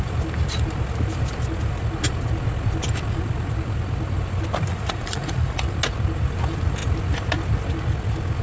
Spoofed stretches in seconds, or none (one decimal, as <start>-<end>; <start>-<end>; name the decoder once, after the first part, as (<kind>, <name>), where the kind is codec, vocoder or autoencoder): 4.7-5.7 (vocoder, Vocos)